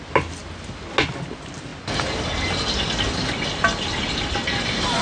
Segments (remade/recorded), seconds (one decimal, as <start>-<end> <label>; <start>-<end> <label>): 0.0-5.0 recorded